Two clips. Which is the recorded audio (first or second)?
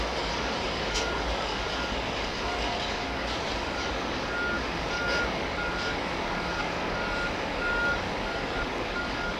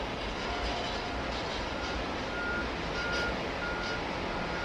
second